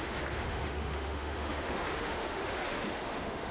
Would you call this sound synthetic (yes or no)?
yes